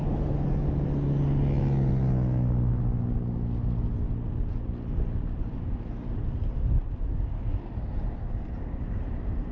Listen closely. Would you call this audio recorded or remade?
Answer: recorded